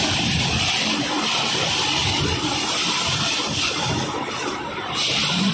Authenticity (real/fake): fake